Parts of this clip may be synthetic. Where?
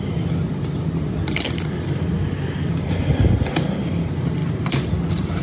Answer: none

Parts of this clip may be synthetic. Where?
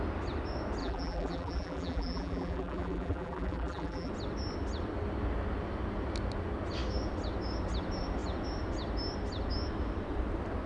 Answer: 0.8-4.1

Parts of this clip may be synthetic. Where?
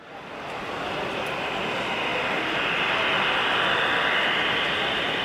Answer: none